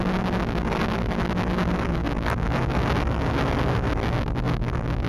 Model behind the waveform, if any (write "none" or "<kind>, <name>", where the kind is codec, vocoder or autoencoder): none